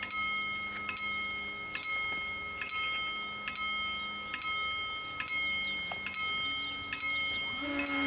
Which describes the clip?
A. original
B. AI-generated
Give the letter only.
A